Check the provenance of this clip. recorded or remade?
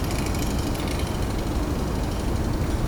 recorded